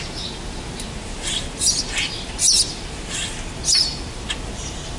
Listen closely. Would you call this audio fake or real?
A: real